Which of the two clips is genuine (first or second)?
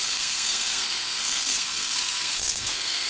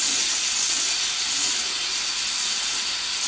second